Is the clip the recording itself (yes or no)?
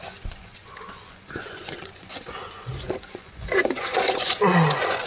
no